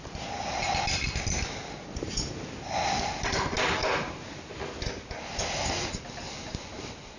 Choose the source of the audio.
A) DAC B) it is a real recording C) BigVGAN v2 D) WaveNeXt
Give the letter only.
B